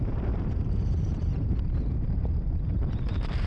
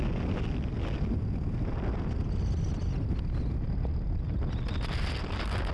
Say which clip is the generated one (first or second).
first